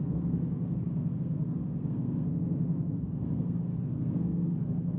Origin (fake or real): fake